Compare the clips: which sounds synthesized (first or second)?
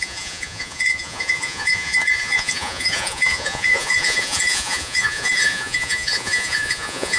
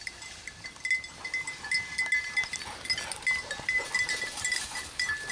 first